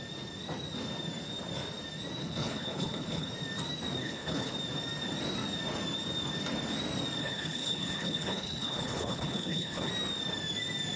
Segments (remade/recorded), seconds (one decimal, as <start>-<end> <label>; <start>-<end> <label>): 0.0-2.2 recorded; 2.2-3.3 remade; 3.3-4.0 recorded; 4.0-4.5 remade; 4.5-7.2 recorded; 7.2-9.9 remade; 9.9-11.0 recorded